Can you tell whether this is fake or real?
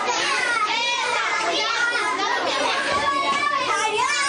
fake